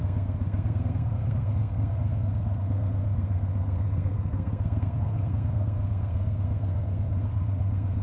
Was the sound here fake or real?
fake